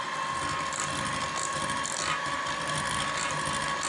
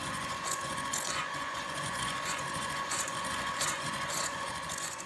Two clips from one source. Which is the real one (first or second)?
first